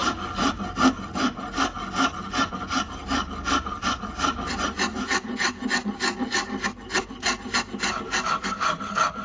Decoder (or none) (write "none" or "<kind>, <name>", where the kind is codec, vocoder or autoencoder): none